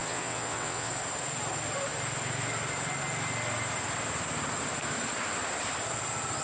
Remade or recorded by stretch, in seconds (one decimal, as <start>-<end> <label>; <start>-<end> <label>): 0.0-0.9 remade; 0.9-6.4 recorded

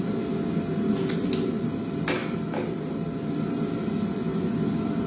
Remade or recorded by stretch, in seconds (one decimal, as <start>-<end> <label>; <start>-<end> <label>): 0.0-5.1 recorded

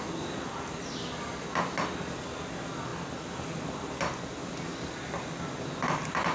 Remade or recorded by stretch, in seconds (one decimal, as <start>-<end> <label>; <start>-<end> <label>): 0.0-6.3 recorded

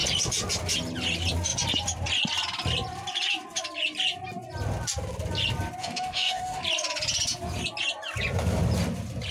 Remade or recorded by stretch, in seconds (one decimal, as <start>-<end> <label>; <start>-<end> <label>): 0.0-5.8 recorded; 5.8-6.6 remade; 6.6-9.3 recorded

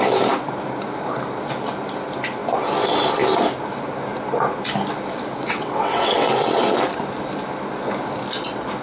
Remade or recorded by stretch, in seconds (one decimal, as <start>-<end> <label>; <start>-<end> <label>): 0.0-5.3 recorded; 5.3-6.6 remade; 6.6-8.8 recorded

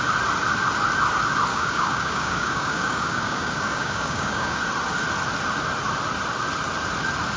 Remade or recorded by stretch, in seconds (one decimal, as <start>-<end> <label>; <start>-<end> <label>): 0.0-1.5 recorded; 1.5-4.6 remade; 4.6-7.4 recorded

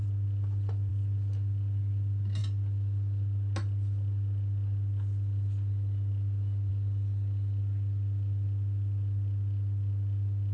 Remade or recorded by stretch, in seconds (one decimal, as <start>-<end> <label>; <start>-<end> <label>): 0.0-10.5 recorded

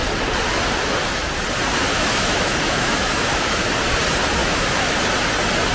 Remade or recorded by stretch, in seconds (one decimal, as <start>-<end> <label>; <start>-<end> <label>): 0.0-1.9 recorded; 1.9-3.7 remade; 3.7-4.4 recorded; 4.4-4.9 remade; 4.9-5.7 recorded